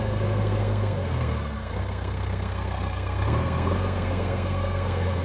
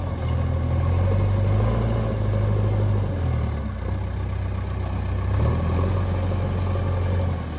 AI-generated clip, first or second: first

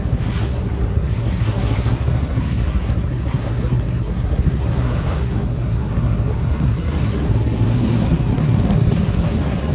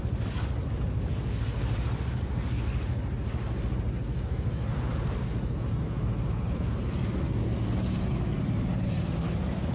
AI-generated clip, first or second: first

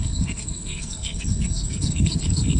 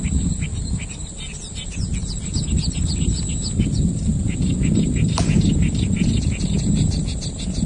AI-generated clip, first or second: first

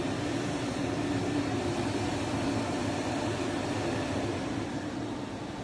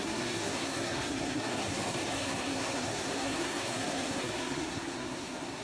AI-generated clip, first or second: second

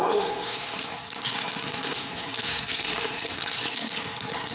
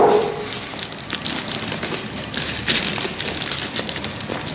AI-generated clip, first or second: first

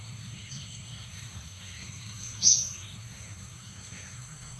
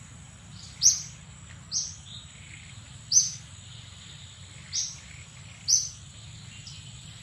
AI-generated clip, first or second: first